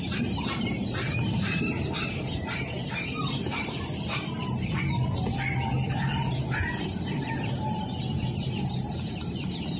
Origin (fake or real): fake